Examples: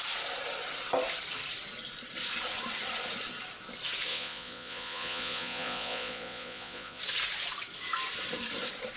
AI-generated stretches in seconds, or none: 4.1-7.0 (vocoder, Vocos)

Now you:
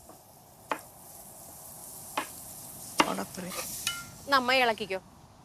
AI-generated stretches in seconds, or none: none